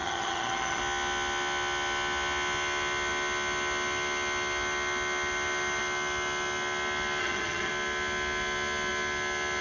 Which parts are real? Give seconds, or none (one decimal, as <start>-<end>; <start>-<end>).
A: 0.8-7.2; 7.7-9.6

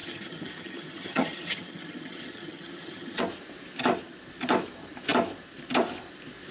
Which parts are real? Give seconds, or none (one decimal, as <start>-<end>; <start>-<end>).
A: 3.2-6.5